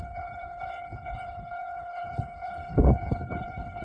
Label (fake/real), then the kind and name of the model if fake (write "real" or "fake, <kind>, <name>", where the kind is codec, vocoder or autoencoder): fake, codec, HILCodec